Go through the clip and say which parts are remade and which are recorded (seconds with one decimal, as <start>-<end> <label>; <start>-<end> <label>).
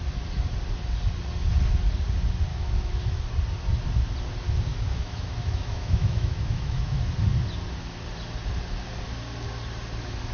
0.0-2.5 recorded; 2.5-3.2 remade; 3.2-4.7 recorded; 4.7-7.0 remade; 7.0-10.3 recorded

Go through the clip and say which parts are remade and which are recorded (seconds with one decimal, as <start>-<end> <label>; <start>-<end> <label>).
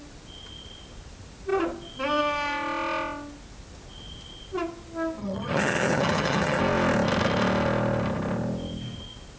0.0-5.2 recorded; 5.2-6.6 remade; 6.6-9.4 recorded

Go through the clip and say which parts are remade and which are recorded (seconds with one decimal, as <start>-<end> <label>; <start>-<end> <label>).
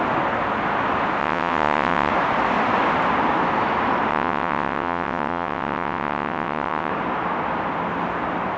0.0-1.2 recorded; 1.2-2.1 remade; 2.1-4.1 recorded; 4.1-6.9 remade; 6.9-8.6 recorded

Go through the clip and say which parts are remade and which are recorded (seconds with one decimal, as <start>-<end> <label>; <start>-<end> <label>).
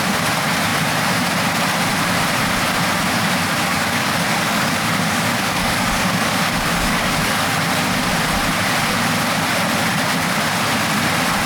0.0-3.7 recorded; 3.7-7.5 remade; 7.5-11.5 recorded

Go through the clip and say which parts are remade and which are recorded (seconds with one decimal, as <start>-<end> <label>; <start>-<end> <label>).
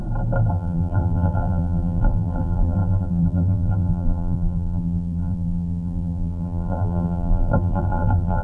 0.0-0.5 recorded; 0.5-8.4 remade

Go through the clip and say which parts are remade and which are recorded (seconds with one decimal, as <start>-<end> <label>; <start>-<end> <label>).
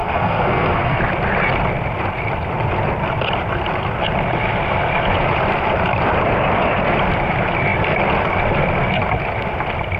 0.0-1.0 remade; 1.0-10.0 recorded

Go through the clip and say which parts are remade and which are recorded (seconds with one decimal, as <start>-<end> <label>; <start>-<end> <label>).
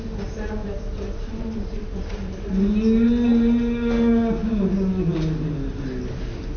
0.0-0.6 recorded; 0.6-2.5 remade; 2.5-6.6 recorded